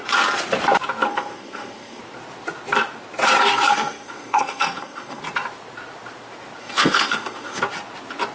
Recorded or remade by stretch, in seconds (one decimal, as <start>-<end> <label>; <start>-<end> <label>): 0.0-1.1 recorded; 1.1-2.0 remade; 2.0-3.5 recorded; 3.5-5.2 remade; 5.2-6.6 recorded; 6.6-7.6 remade; 7.6-8.3 recorded